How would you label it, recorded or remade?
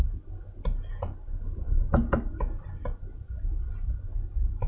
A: recorded